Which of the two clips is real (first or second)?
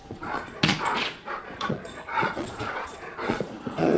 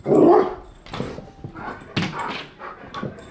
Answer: second